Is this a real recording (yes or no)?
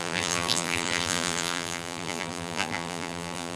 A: no